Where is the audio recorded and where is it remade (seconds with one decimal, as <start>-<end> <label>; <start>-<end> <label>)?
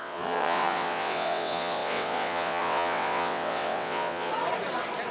0.0-4.3 remade; 4.3-5.1 recorded